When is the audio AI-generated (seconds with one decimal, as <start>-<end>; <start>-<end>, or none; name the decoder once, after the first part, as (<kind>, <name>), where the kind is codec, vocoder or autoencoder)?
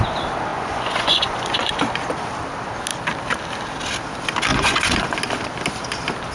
0.5-1.8 (vocoder, Vocos); 4.5-5.1